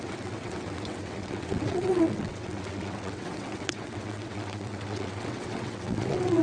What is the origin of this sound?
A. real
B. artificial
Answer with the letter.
B